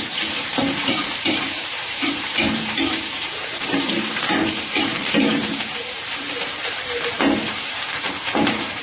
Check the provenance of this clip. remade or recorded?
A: remade